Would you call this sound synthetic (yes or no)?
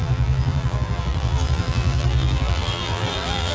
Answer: yes